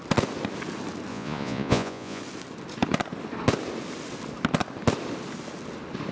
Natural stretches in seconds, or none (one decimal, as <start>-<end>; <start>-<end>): 0.0-1.1; 2.2-6.1